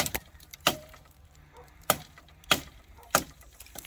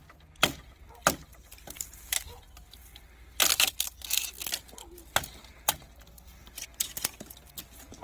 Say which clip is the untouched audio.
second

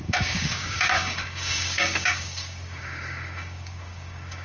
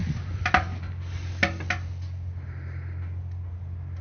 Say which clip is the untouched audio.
second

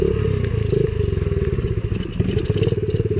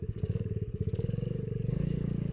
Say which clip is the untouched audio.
first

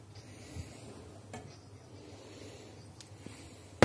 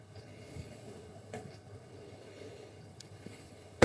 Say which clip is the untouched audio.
first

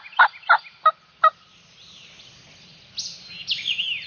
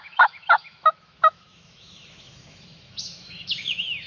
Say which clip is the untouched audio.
first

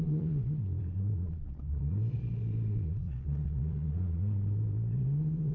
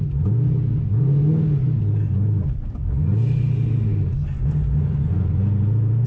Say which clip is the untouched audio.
second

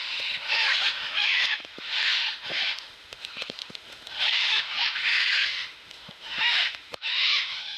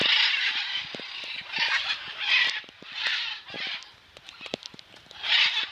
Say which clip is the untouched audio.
second